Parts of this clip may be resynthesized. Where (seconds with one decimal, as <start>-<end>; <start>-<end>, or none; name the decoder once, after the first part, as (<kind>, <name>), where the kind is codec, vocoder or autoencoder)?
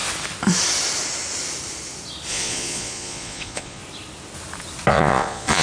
2.3-3.8 (vocoder, Vocos); 4.9-5.6